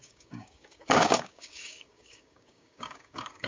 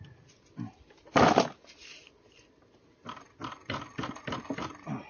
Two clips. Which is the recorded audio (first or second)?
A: second